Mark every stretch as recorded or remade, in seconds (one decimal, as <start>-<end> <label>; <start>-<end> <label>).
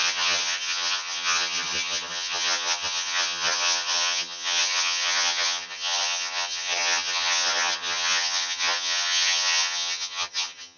0.0-10.8 remade